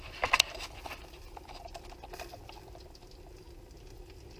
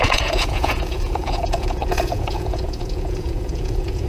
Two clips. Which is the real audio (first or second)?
first